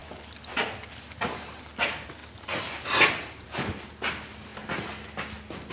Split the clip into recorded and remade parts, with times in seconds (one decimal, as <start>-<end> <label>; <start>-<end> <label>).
0.0-5.7 recorded